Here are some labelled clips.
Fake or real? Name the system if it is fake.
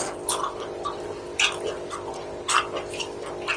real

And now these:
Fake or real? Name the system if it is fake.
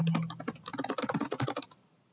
real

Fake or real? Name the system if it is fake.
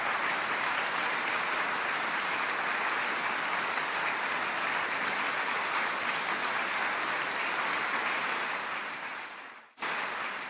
real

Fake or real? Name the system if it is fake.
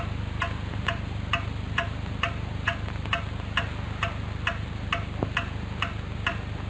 real